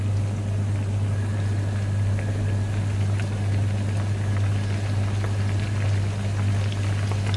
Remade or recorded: recorded